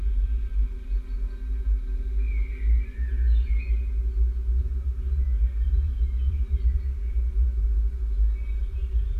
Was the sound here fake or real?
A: real